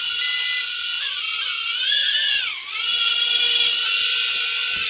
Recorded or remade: recorded